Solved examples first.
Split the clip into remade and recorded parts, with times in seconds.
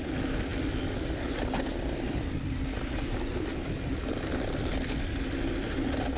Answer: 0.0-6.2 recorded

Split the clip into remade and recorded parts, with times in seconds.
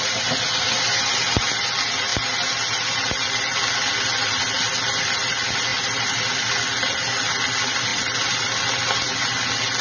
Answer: 0.0-5.7 recorded; 5.7-6.5 remade; 6.5-7.9 recorded; 7.9-8.6 remade; 8.6-9.8 recorded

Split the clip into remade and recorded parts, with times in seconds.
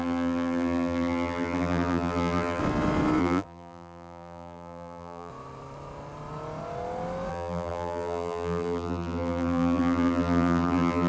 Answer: 0.0-2.6 remade; 2.6-3.2 recorded; 3.2-5.3 remade; 5.3-7.3 recorded; 7.3-11.1 remade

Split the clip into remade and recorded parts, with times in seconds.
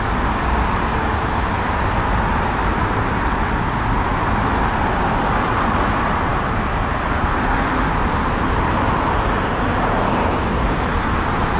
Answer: 0.0-11.6 recorded